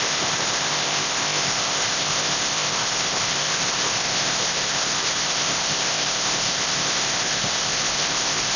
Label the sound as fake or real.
fake